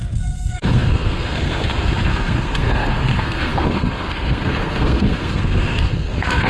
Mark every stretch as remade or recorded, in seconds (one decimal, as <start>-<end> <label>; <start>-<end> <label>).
0.0-6.5 remade